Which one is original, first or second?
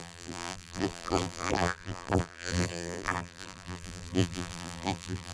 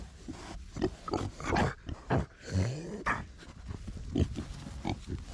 second